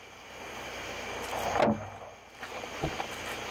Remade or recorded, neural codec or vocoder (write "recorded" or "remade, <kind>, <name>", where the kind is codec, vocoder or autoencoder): recorded